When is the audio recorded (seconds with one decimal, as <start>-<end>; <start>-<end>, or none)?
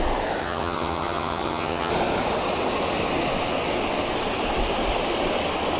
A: 0.0-0.4; 1.9-5.8